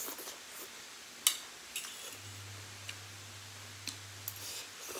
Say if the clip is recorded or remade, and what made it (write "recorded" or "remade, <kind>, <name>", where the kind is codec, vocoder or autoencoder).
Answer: recorded